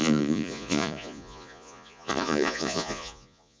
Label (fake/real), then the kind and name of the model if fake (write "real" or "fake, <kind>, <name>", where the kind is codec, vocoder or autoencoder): fake, vocoder, Vocos